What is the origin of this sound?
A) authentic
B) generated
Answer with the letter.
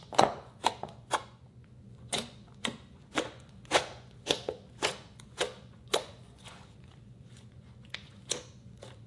B